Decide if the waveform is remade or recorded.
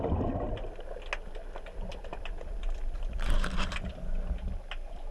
recorded